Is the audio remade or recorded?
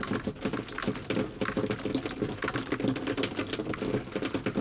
recorded